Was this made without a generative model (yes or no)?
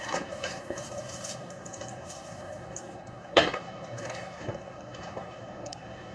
no